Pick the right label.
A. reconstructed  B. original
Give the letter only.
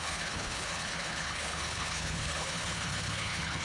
A